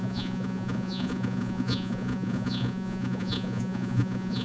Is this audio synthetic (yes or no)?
yes